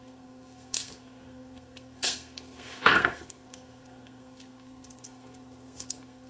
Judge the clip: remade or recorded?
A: remade